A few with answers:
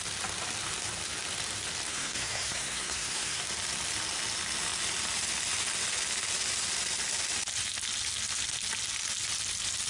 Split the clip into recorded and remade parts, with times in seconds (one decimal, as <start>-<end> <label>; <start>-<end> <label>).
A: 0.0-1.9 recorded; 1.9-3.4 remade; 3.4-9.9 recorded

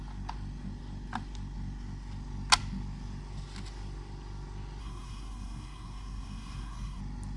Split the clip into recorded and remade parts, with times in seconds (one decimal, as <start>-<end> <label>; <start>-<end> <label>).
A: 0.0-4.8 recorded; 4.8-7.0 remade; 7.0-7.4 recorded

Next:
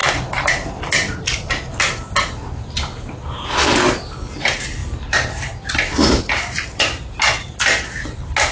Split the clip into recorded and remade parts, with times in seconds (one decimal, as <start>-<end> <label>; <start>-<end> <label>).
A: 0.0-8.5 recorded